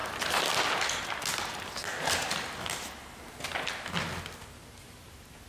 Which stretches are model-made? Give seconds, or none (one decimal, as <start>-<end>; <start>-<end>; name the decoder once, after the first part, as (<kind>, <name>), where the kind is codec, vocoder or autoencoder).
none